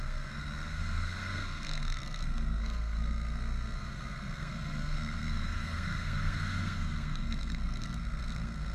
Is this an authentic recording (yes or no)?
no